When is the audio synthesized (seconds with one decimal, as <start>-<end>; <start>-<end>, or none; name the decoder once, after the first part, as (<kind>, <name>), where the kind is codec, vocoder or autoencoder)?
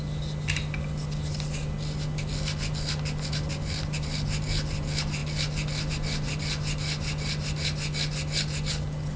none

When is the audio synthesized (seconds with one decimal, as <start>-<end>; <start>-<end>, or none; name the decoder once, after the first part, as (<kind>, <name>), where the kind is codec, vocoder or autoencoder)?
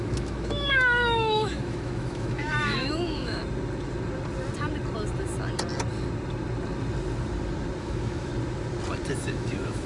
0.0-3.4 (autoencoder, DAC-VAE); 7.8-8.3; 9.1-9.9